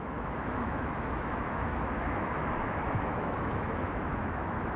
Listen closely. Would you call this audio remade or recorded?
remade